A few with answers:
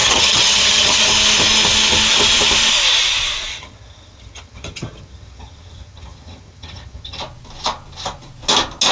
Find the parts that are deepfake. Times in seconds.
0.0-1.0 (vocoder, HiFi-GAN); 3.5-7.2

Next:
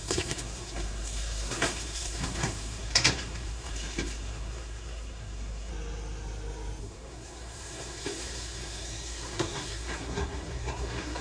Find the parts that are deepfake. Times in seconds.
0.0-5.7 (codec, SNAC); 6.8-11.2